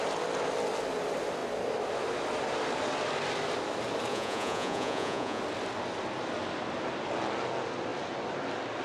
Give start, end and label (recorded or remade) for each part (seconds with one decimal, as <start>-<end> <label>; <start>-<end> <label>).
0.0-4.1 recorded; 4.1-5.4 remade; 5.4-8.8 recorded